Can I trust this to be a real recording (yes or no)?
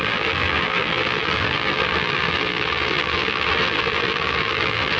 no